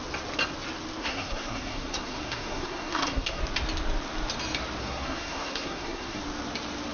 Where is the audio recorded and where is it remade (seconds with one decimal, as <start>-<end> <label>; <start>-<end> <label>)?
0.0-1.0 recorded; 1.0-3.4 remade; 3.4-4.8 recorded; 4.8-6.2 remade; 6.2-6.9 recorded